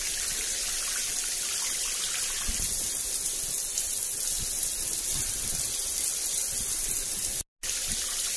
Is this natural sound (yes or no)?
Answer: yes